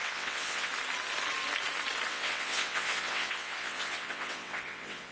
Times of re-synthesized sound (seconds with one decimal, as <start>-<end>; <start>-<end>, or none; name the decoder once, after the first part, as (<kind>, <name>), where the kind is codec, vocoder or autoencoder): 0.0-0.7 (vocoder, WaveNeXt); 2.1-5.1